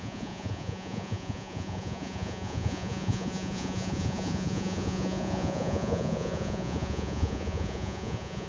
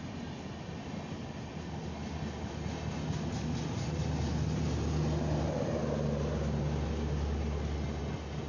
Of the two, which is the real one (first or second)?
second